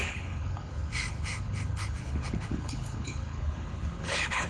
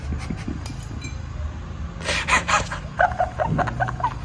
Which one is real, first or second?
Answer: second